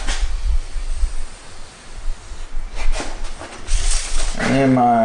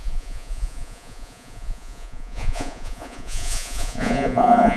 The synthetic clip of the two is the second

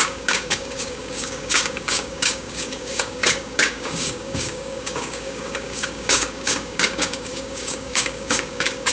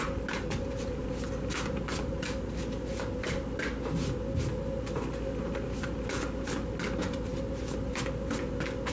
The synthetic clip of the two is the first